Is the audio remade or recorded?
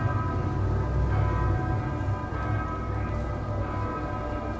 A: recorded